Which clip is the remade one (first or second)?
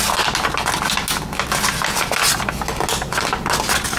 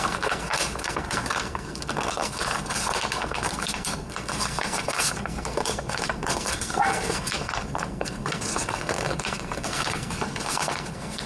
second